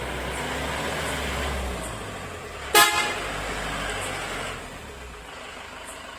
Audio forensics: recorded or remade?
recorded